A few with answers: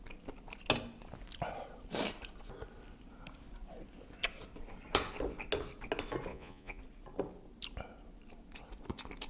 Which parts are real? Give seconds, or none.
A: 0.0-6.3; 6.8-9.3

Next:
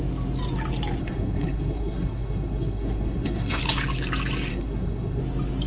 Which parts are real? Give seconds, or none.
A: 0.0-1.0; 3.6-4.5; 5.2-5.7